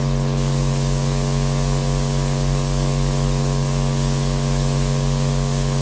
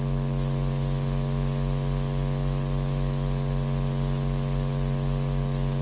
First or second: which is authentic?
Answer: second